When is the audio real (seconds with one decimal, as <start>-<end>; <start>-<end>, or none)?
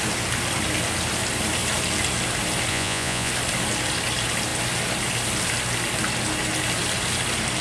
0.0-2.7; 3.3-7.6